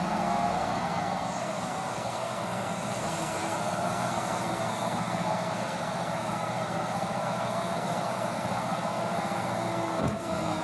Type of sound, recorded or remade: remade